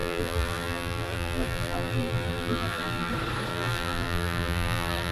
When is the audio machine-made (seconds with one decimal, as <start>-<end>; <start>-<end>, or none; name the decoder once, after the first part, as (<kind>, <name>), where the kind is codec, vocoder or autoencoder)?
0.0-3.1 (vocoder, BigVGAN v2); 3.5-5.1